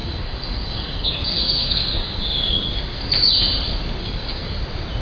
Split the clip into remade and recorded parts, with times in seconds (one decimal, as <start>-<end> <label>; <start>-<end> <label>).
0.0-3.0 remade; 3.0-4.0 recorded; 4.0-4.6 remade; 4.6-5.0 recorded